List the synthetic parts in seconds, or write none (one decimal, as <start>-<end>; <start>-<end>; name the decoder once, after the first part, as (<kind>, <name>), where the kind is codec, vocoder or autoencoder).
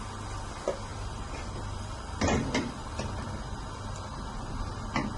0.9-4.0 (vocoder, BigVGAN v2)